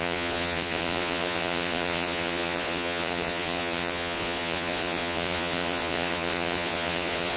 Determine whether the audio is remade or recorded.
remade